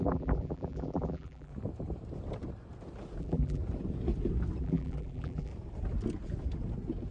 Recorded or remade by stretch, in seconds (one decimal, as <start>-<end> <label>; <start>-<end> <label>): 0.0-1.5 remade; 1.5-3.2 recorded; 3.2-3.6 remade; 3.6-4.6 recorded; 4.6-5.5 remade; 5.5-7.1 recorded